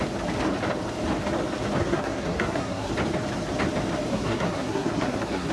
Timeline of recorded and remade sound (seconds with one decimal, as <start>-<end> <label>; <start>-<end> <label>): 0.0-1.8 recorded; 1.8-2.9 remade; 2.9-4.1 recorded; 4.1-5.5 remade